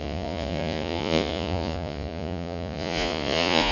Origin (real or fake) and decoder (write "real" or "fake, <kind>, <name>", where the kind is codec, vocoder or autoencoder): fake, vocoder, Vocos